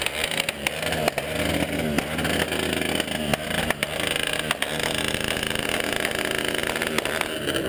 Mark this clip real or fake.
real